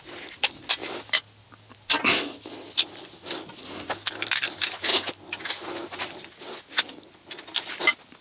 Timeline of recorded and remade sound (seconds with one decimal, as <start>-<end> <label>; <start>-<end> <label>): 0.0-8.2 recorded